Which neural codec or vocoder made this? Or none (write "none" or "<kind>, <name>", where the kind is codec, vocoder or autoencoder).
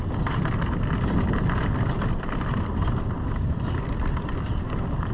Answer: none